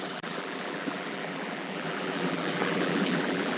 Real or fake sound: fake